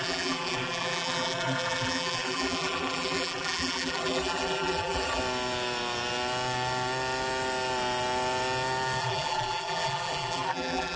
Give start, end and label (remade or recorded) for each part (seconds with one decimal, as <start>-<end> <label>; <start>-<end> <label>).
0.0-5.2 remade; 5.2-9.0 recorded; 9.0-11.0 remade